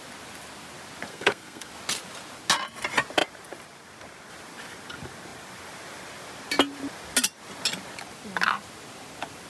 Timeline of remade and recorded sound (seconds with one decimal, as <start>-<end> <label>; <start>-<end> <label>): 0.0-1.1 recorded; 1.1-1.7 remade; 1.7-9.5 recorded